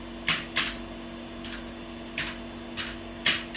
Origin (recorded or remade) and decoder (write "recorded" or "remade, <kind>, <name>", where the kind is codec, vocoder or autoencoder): recorded